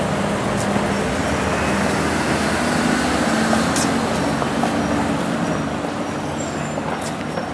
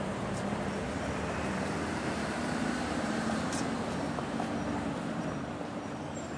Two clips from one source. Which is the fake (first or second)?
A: second